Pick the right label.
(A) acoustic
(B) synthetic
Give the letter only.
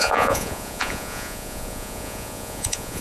B